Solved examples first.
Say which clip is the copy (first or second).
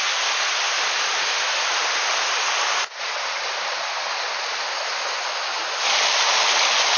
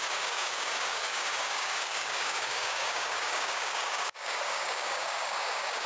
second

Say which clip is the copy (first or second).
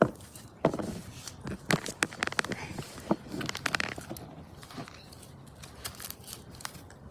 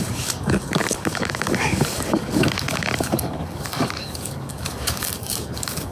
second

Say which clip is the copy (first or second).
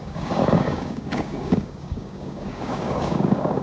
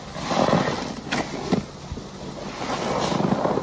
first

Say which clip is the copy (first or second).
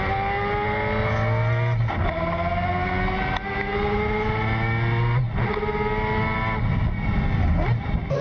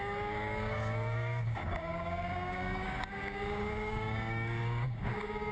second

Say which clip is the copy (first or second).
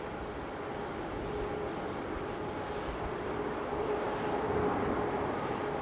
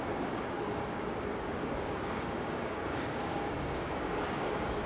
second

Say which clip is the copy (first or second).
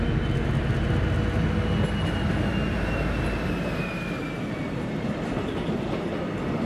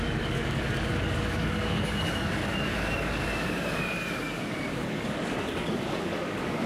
second